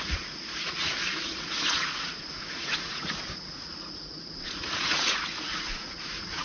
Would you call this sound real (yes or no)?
no